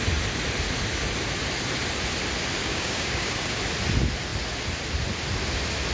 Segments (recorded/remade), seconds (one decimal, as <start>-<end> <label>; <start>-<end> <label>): 0.0-2.6 recorded; 2.6-3.6 remade; 3.6-5.9 recorded